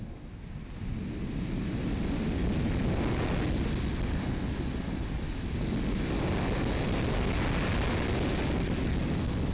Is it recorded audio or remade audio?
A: recorded